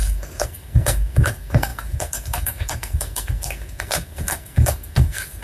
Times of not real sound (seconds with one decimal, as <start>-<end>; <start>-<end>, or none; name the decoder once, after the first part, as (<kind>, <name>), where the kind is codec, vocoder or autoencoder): 0.0-5.4 (codec, SNAC)